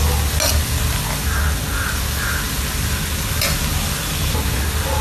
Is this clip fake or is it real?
real